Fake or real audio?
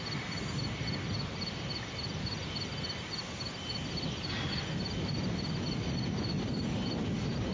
real